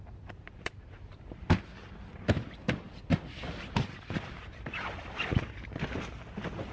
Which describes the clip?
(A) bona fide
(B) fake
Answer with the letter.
A